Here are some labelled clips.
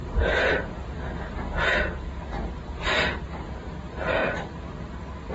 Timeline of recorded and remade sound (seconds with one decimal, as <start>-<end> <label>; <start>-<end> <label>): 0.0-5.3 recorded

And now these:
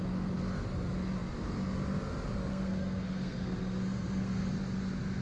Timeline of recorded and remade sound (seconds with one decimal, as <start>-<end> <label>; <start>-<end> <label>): 0.0-2.5 recorded; 2.5-4.5 remade; 4.5-5.2 recorded

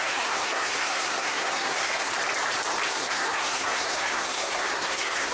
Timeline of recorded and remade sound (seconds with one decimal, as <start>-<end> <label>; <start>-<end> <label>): 0.0-2.1 remade; 2.1-2.9 recorded; 2.9-5.3 remade